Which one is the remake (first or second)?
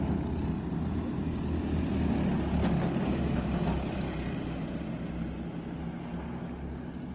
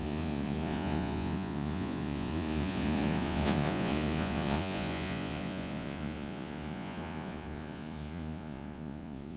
second